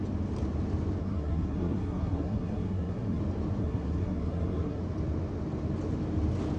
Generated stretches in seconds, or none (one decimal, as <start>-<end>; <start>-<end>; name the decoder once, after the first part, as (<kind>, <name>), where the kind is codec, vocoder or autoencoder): 1.0-3.2 (codec, SNAC); 3.6-4.8